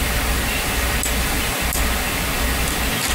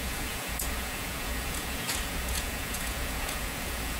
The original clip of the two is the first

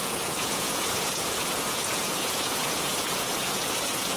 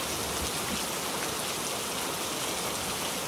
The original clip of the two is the second